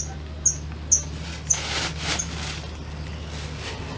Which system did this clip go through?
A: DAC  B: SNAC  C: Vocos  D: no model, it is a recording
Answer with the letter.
D